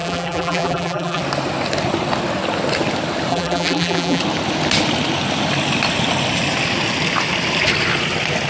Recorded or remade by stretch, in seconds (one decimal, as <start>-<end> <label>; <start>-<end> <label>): 0.0-1.2 remade; 1.2-3.3 recorded; 3.3-4.2 remade; 4.2-8.5 recorded